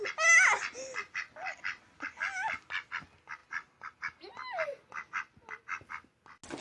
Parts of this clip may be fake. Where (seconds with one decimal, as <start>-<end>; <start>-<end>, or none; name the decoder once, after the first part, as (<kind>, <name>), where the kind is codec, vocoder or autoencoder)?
none